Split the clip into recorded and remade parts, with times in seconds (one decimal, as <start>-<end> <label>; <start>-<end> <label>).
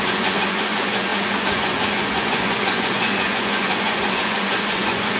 0.0-5.2 remade